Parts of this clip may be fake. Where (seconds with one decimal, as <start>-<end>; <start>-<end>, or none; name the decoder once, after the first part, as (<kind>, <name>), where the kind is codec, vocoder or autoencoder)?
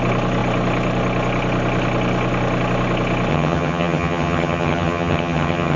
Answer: 3.3-5.8 (vocoder, HiFi-GAN)